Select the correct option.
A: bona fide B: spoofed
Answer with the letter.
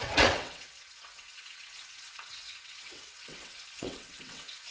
B